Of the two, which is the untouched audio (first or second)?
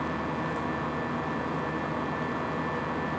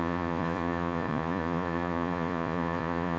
first